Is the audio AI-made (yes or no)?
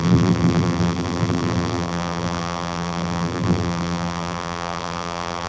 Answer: yes